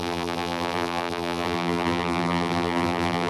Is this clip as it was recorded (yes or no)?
no